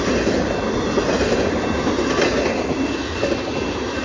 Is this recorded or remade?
recorded